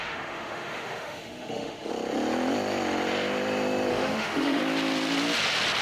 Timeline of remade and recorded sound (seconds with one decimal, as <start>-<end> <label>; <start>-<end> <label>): 0.0-1.9 remade; 1.9-3.9 recorded; 3.9-4.6 remade; 4.6-5.8 recorded